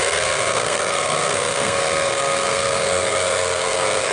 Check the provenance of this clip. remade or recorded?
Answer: remade